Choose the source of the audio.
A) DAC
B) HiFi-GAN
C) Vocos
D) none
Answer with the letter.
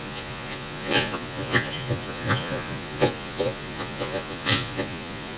C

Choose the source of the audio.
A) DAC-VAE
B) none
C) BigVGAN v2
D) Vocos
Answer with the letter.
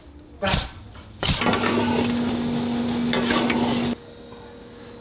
B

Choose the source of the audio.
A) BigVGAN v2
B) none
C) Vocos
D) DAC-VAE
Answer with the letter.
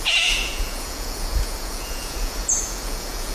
C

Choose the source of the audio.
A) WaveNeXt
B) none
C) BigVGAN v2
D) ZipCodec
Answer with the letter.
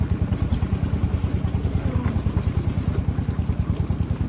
B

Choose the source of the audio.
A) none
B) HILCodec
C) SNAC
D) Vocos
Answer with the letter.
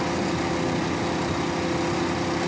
A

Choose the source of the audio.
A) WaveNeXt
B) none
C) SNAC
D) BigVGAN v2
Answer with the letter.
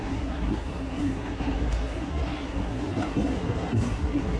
C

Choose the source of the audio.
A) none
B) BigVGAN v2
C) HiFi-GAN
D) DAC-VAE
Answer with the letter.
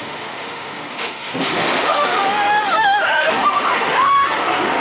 D